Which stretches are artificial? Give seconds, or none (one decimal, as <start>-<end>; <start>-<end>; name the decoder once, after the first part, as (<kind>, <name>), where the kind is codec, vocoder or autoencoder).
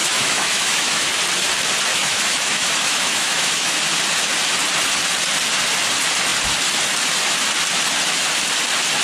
0.0-1.1 (autoencoder, DAC-VAE); 1.9-3.8